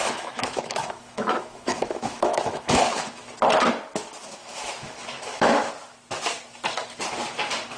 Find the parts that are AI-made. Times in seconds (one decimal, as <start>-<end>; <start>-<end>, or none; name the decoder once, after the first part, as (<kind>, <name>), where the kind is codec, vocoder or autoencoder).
0.0-3.3 (autoencoder, DAC-VAE); 4.4-5.7